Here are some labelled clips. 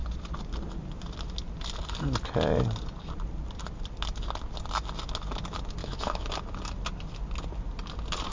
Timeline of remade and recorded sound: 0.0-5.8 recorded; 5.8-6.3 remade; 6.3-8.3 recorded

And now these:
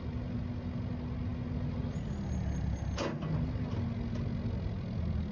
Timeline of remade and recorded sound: 0.0-5.3 recorded

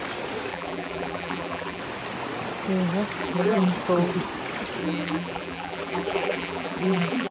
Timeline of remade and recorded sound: 0.0-0.5 recorded; 0.5-1.8 remade; 1.8-3.2 recorded; 3.2-3.7 remade; 3.7-4.8 recorded; 4.8-7.3 remade